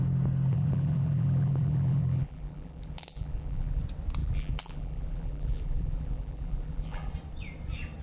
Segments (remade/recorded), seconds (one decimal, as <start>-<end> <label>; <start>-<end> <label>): 0.0-0.5 recorded; 0.5-3.8 remade; 3.8-4.2 recorded; 4.2-7.1 remade; 7.1-8.0 recorded